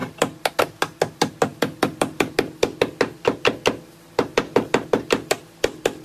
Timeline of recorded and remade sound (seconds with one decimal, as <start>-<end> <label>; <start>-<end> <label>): 0.0-6.0 recorded